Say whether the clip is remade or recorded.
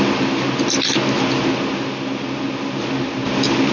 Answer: recorded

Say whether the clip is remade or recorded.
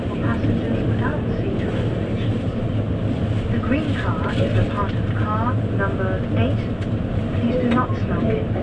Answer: recorded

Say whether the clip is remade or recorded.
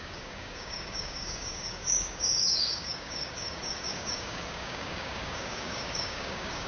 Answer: remade